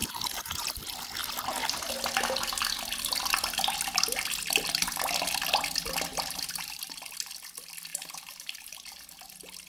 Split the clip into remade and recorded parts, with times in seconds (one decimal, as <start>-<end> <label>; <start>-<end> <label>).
0.0-0.7 remade; 0.7-6.1 recorded; 6.1-6.8 remade; 6.8-7.9 recorded; 7.9-9.0 remade; 9.0-9.7 recorded